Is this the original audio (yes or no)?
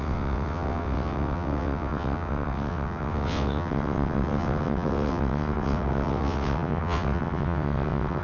no